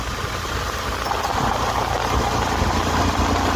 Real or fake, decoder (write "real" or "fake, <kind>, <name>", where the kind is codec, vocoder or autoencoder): real